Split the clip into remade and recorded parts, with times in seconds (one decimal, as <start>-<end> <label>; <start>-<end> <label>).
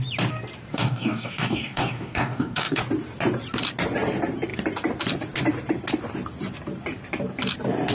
0.0-0.7 recorded; 0.7-2.8 remade; 2.8-7.9 recorded